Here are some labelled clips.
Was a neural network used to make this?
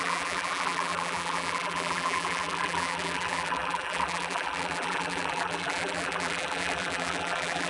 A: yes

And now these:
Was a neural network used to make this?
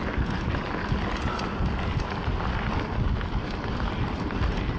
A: no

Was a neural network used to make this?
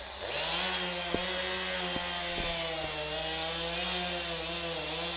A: no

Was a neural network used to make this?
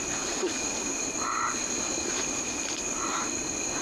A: no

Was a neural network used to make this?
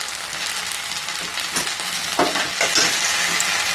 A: no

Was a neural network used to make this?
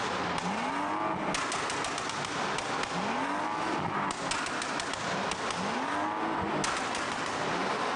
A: no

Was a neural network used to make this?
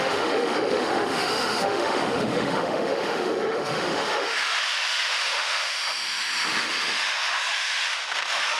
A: yes